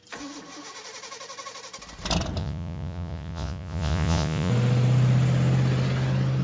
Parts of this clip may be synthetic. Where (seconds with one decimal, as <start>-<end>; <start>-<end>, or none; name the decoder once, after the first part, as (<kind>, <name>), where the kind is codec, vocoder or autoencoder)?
2.4-4.5 (vocoder, Vocos)